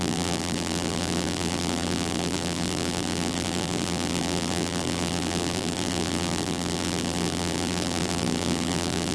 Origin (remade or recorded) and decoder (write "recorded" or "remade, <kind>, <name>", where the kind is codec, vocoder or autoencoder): remade, vocoder, BigVGAN v2